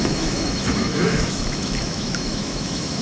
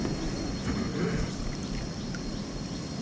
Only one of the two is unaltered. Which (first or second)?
second